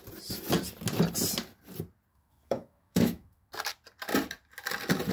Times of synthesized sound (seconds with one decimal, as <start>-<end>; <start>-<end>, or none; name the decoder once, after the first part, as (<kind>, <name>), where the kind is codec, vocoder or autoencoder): 2.1-3.5 (autoencoder, DAC-VAE)